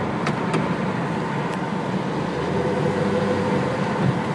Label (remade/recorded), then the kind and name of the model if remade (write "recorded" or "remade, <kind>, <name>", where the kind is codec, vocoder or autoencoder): recorded